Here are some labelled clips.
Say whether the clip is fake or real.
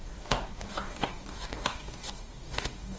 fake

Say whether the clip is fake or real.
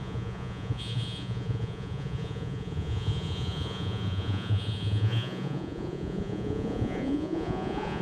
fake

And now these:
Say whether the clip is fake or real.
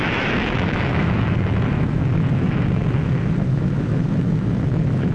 fake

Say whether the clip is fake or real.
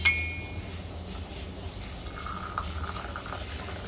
real